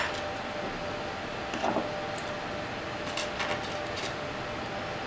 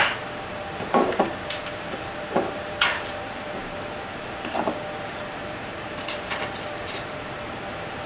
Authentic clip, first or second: first